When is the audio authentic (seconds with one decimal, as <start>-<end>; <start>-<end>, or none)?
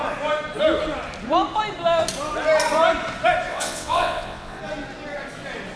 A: 0.0-3.5; 4.6-5.8